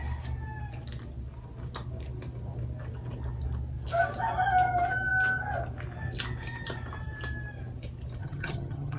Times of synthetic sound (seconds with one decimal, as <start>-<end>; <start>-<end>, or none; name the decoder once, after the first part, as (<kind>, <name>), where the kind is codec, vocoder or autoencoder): 8.2-9.0 (vocoder, HiFi-GAN)